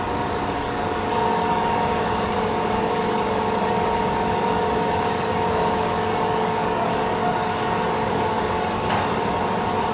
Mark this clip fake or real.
fake